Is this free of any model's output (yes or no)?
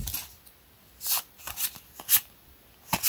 yes